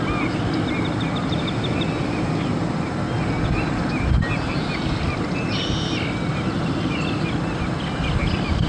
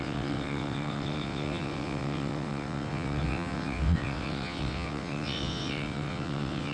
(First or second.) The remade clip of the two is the second